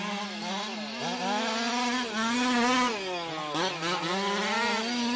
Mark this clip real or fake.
real